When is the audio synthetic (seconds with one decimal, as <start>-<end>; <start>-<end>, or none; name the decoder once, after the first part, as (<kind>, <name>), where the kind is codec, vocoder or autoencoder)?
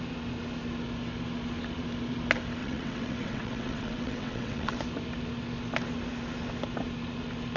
2.6-4.8 (vocoder, WaveNeXt)